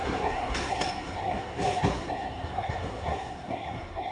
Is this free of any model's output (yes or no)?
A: no